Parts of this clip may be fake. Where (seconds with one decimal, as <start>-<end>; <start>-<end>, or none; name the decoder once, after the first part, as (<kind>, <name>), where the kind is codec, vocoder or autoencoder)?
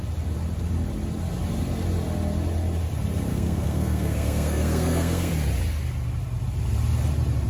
3.3-5.3 (codec, SNAC)